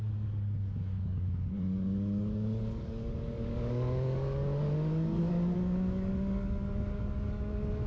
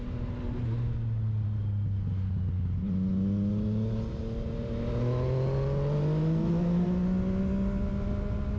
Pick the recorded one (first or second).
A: second